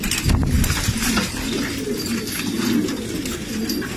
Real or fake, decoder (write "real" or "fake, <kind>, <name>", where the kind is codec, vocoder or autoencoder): real